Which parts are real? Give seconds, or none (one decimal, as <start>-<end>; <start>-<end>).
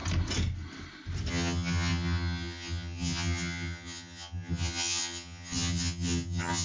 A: 0.0-1.3